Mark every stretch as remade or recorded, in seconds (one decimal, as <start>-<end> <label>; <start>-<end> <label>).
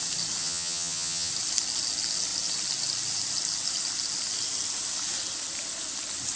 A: 0.0-0.4 recorded; 0.4-1.3 remade; 1.3-6.4 recorded